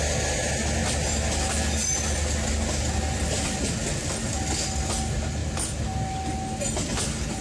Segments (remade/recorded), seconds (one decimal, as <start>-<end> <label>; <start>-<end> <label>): 0.0-5.4 recorded; 5.4-5.9 remade; 5.9-7.4 recorded